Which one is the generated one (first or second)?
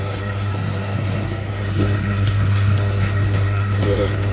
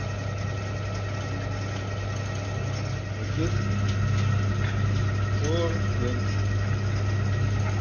first